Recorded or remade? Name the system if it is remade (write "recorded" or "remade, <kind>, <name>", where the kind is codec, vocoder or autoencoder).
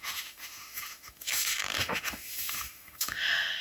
remade, autoencoder, DAC-VAE